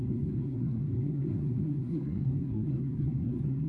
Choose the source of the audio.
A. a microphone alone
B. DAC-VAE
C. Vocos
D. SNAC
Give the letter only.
D